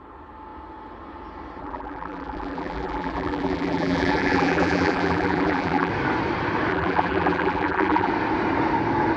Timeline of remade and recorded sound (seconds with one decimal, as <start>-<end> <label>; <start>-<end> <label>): 0.0-1.6 recorded; 1.6-5.9 remade; 5.9-6.7 recorded; 6.7-8.1 remade; 8.1-9.2 recorded